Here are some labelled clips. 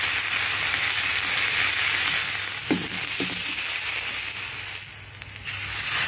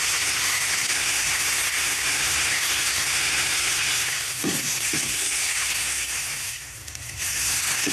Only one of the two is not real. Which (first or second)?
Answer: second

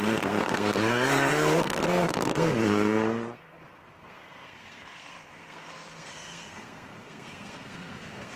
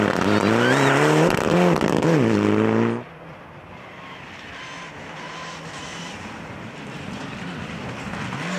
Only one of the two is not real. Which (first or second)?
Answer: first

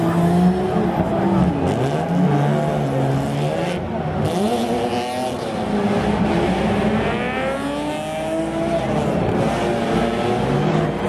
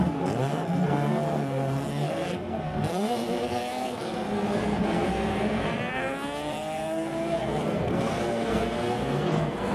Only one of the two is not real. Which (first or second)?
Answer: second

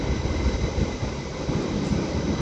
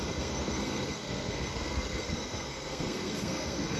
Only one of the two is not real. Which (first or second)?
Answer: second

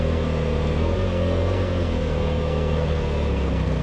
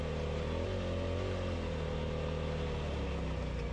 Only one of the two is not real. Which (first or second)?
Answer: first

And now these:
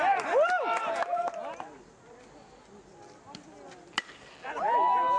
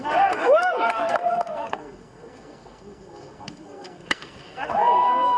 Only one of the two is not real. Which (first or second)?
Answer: second